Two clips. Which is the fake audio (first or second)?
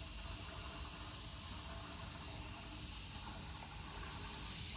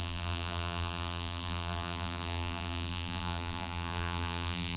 second